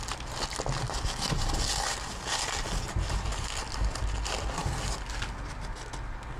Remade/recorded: recorded